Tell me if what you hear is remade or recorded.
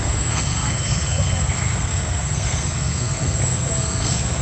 remade